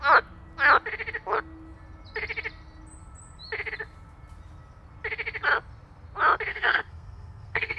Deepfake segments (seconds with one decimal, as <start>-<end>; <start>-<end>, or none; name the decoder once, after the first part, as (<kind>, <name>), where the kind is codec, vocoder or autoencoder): 6.5-7.8 (codec, SNAC)

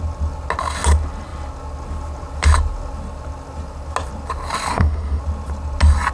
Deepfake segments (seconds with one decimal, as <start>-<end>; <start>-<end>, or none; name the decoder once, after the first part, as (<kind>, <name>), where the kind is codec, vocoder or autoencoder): 4.7-5.2 (codec, SNAC)

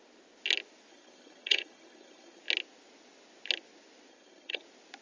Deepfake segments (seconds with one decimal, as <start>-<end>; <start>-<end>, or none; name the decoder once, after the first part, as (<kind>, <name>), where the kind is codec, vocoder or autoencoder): 0.9-2.4 (vocoder, HiFi-GAN); 4.1-4.6

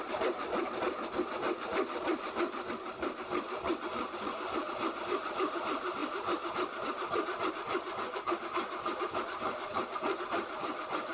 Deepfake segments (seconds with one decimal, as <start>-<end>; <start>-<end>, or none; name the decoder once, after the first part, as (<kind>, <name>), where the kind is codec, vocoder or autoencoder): 1.7-2.8 (vocoder, BigVGAN v2); 6.0-7.5

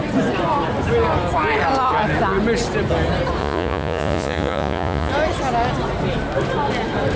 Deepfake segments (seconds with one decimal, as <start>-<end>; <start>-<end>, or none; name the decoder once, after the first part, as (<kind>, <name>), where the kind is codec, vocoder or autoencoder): 3.4-5.1 (vocoder, Vocos)